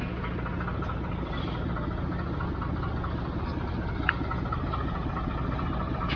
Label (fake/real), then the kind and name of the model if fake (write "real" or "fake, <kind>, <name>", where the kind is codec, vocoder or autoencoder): real